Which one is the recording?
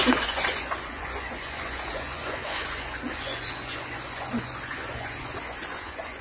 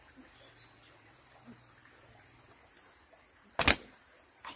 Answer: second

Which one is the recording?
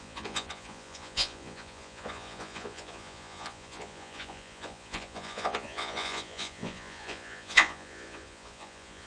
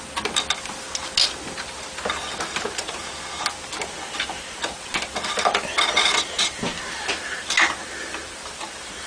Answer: second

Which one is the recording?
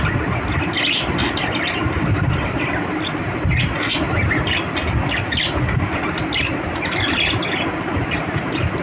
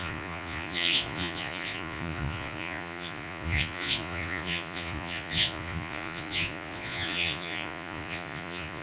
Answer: first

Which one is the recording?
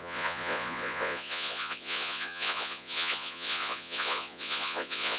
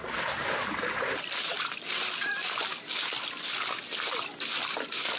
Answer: second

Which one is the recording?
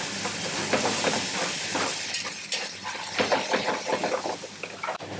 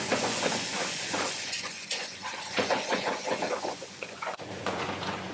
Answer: first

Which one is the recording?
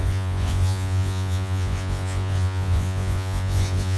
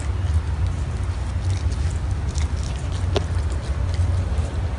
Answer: second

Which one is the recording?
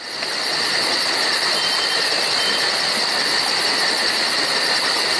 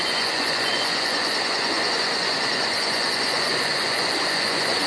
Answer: first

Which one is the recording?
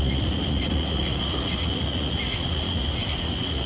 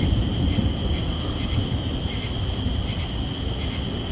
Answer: second